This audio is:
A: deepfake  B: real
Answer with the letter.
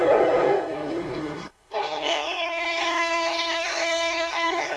A